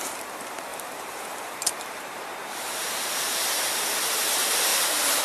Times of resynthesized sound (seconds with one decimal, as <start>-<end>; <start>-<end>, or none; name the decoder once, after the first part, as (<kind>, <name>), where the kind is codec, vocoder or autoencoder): 0.7-3.8 (vocoder, BigVGAN v2); 4.7-5.2